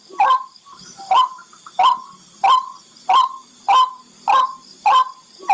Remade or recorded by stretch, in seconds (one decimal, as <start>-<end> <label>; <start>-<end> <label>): 0.0-5.5 recorded